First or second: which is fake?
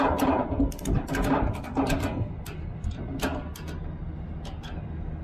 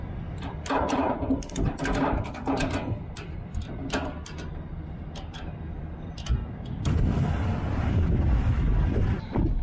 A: second